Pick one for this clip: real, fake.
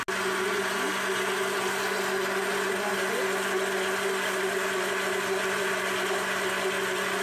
real